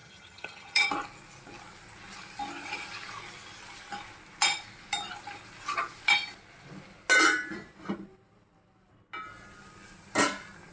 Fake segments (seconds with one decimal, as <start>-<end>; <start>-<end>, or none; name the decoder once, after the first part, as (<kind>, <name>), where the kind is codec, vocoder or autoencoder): 0.0-0.9 (vocoder, HiFi-GAN)